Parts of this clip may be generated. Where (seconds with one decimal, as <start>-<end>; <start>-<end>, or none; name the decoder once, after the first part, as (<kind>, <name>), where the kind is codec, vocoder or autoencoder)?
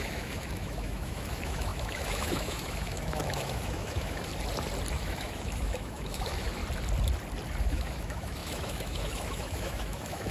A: 0.0-4.3 (autoencoder, DAC-VAE); 4.9-6.6; 7.6-10.3